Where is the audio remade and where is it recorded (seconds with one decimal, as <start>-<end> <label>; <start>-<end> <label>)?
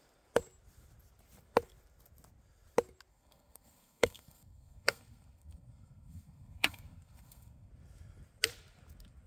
0.0-3.1 recorded; 3.1-7.7 remade; 7.7-9.3 recorded